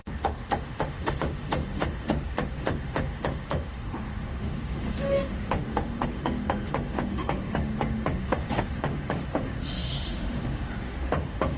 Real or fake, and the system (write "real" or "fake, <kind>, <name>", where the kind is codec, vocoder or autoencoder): fake, autoencoder, DAC-VAE